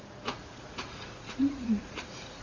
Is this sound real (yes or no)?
no